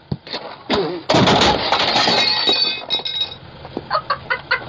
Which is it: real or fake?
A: real